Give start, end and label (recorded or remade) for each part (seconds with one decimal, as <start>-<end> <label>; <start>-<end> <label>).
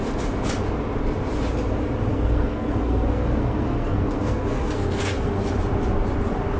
0.0-2.1 recorded; 2.1-5.5 remade; 5.5-6.6 recorded